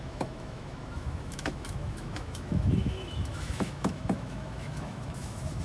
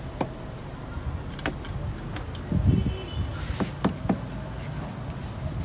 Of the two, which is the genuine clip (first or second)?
second